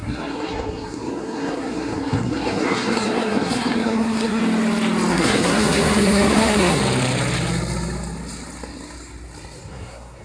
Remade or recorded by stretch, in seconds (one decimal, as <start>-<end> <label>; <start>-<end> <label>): 0.0-4.4 remade; 4.4-5.1 recorded; 5.1-6.8 remade; 6.8-9.7 recorded; 9.7-10.2 remade